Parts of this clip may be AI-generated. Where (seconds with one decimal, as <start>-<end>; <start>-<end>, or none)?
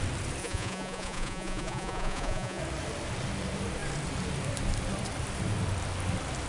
0.4-2.6